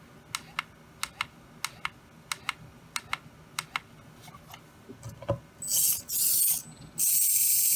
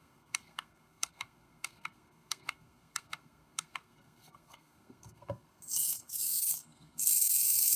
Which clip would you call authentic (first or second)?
first